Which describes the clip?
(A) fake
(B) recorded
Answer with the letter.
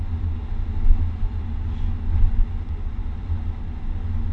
B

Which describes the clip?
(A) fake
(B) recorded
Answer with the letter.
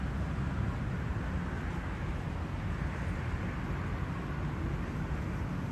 B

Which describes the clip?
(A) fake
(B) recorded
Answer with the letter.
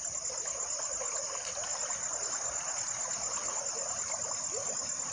B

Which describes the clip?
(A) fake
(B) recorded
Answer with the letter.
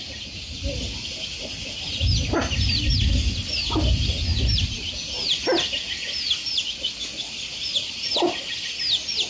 B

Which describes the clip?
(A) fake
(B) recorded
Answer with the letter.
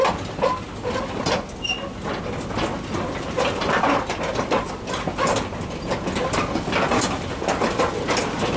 B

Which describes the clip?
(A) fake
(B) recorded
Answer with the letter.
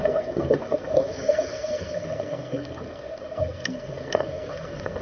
A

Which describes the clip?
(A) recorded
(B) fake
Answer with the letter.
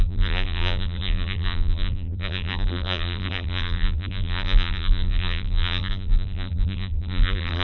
B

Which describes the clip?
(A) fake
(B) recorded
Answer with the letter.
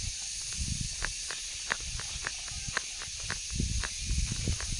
B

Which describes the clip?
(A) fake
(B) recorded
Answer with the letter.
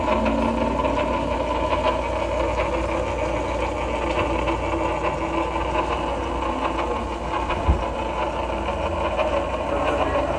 B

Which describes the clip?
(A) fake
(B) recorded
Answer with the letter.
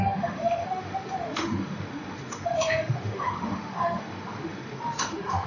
A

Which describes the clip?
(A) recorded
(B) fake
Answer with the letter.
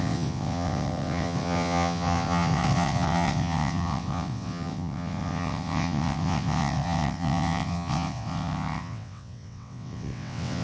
B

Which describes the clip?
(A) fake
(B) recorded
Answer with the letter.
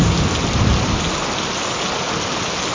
B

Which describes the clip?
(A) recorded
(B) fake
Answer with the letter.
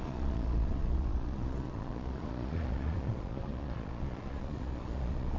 B